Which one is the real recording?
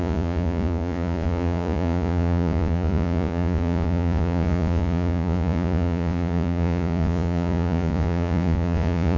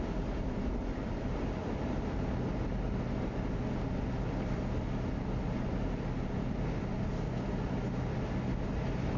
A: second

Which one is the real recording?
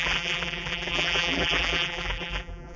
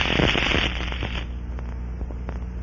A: second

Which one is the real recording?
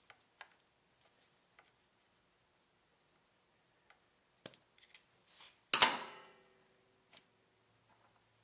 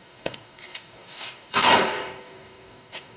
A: first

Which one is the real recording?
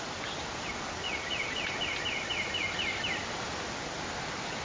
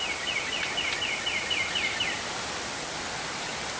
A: first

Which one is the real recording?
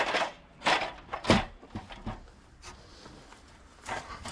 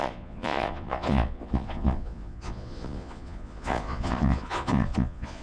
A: first